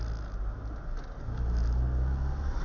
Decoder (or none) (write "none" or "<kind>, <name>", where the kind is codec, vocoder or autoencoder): none